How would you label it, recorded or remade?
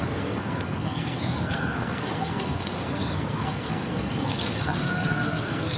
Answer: remade